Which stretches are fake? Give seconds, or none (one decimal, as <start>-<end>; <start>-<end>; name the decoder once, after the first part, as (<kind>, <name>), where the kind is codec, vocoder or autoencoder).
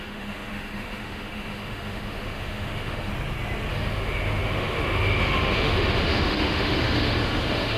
0.0-3.1 (autoencoder, DAC-VAE); 3.7-7.8